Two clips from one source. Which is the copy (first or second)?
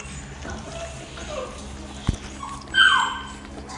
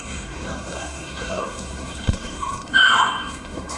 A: second